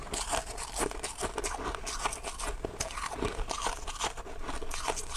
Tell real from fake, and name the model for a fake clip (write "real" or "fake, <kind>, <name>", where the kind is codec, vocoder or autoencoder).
real